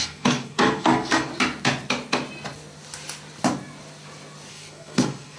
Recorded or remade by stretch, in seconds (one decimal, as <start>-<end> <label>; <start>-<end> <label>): 0.0-1.3 remade; 1.3-4.5 recorded; 4.5-5.4 remade